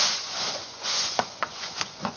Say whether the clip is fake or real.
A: fake